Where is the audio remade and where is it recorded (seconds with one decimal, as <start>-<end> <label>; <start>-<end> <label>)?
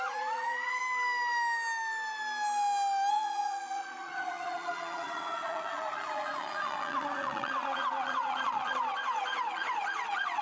0.0-0.8 remade; 0.8-3.1 recorded; 3.1-10.4 remade